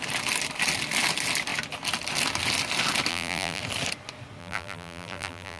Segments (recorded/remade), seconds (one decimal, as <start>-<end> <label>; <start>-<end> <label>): 0.0-3.1 recorded; 3.1-3.6 remade; 3.6-4.4 recorded; 4.4-5.6 remade